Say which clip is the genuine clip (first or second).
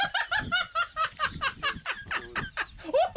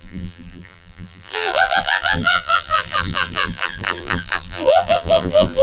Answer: first